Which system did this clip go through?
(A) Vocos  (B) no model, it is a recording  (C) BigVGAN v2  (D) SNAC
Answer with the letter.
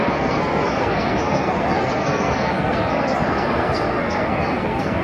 D